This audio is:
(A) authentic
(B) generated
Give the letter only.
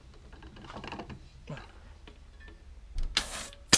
A